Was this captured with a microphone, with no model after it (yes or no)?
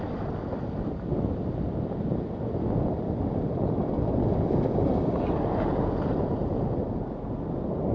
yes